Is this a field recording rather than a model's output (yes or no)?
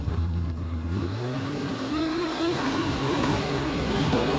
no